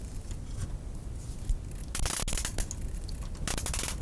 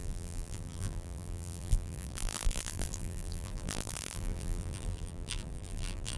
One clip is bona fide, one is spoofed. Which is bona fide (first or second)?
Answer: first